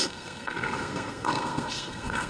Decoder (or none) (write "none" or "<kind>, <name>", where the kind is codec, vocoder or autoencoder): codec, SNAC